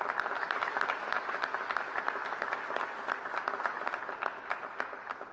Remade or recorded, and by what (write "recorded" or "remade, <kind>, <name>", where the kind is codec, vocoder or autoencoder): recorded